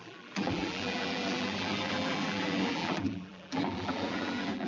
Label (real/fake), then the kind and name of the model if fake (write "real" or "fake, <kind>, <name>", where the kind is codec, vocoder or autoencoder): fake, vocoder, BigVGAN v2